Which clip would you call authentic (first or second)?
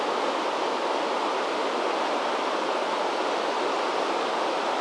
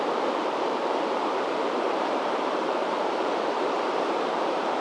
first